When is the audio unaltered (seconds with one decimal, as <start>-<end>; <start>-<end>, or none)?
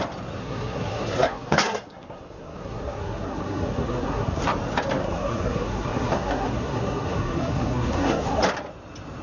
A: 0.0-0.4; 4.4-5.0; 8.4-9.2